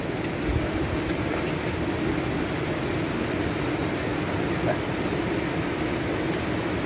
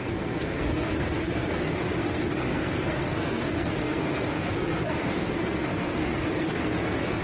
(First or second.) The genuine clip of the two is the first